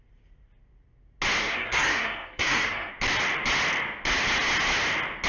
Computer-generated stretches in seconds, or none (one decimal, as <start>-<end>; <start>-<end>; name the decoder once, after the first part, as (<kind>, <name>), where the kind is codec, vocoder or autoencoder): 1.4-2.9 (codec, SNAC)